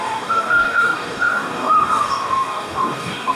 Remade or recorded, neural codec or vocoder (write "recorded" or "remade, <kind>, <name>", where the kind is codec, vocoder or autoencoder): remade, codec, DAC